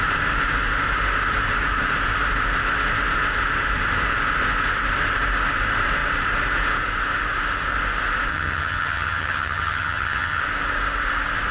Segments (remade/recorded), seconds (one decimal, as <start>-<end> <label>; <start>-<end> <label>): 0.0-8.3 recorded; 8.3-10.4 remade; 10.4-11.5 recorded